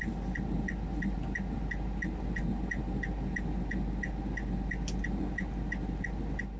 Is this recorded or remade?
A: recorded